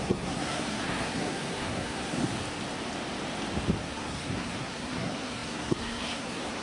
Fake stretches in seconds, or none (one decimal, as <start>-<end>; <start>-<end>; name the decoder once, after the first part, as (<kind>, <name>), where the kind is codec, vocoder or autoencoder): 0.0-2.3 (codec, SNAC); 3.8-6.6